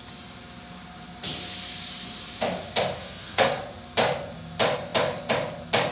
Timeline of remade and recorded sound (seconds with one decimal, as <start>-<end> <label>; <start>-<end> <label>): 0.0-3.0 recorded; 3.0-3.6 remade; 3.6-5.9 recorded